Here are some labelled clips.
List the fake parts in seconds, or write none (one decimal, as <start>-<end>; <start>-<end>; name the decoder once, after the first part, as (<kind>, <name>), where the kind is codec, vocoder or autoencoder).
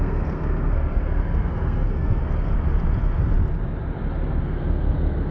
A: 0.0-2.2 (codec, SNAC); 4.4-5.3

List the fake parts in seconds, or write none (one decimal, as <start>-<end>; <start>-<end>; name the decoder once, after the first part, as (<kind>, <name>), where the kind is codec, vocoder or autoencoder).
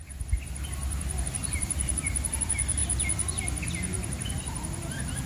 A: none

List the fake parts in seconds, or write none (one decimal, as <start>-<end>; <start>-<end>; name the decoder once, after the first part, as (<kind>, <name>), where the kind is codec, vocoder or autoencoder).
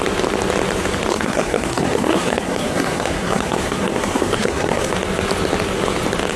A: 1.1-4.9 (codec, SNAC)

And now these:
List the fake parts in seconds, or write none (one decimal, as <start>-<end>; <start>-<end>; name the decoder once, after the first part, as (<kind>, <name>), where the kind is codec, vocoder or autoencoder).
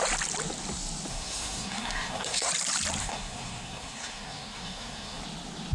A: 1.1-2.5 (codec, SNAC); 3.0-5.2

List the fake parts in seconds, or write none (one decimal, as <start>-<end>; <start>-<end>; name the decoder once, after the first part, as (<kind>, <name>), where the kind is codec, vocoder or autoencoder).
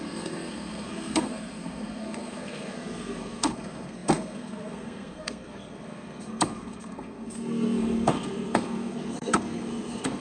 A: 0.0-10.2 (codec, SNAC)